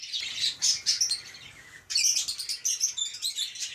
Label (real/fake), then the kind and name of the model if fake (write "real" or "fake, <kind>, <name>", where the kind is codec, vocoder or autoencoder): real